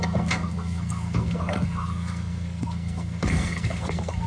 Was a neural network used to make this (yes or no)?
yes